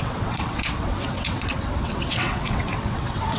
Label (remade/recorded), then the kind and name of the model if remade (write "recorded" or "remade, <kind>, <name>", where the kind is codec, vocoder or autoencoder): remade, vocoder, WaveNeXt